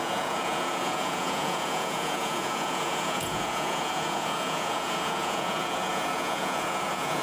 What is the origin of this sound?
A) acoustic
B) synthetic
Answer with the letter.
B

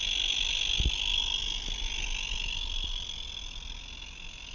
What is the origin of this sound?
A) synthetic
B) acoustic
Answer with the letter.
B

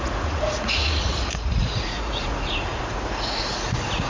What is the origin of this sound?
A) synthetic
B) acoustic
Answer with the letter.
A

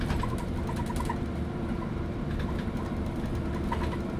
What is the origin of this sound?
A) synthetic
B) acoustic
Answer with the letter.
B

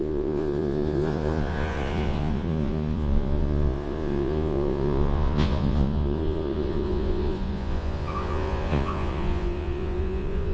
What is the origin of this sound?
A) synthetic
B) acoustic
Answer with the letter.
A